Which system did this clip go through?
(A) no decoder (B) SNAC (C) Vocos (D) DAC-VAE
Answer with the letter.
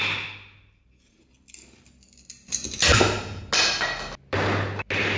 A